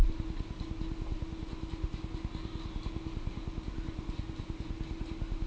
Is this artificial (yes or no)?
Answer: no